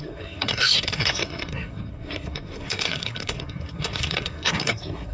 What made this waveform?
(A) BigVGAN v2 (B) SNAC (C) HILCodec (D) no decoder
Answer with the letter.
B